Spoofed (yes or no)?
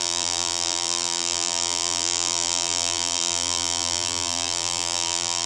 yes